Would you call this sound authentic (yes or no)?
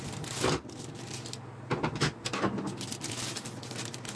yes